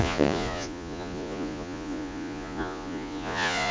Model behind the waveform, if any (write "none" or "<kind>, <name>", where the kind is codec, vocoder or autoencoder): vocoder, Vocos